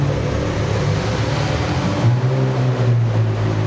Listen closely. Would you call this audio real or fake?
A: real